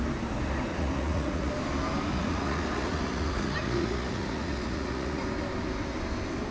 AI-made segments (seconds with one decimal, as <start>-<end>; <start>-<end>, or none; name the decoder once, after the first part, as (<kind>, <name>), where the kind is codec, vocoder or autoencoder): 0.7-1.5 (vocoder, Vocos); 2.1-5.2